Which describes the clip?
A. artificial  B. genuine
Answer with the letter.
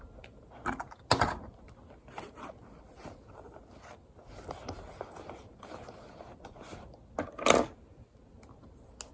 B